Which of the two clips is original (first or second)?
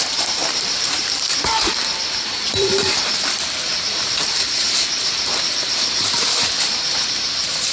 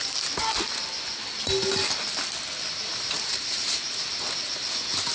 second